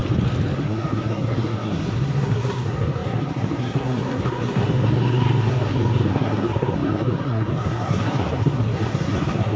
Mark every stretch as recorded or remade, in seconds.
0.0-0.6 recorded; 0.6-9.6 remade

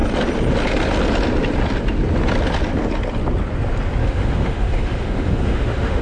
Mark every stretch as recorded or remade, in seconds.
0.0-4.0 recorded; 4.0-6.0 remade

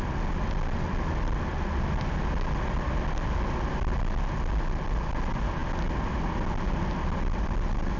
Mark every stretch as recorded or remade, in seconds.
0.0-8.0 recorded

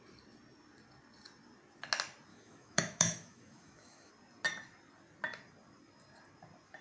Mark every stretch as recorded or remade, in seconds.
0.0-2.3 recorded; 2.3-4.1 remade; 4.1-6.8 recorded

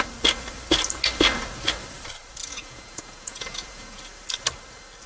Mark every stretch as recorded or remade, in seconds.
0.0-2.4 recorded; 2.4-4.0 remade; 4.0-5.1 recorded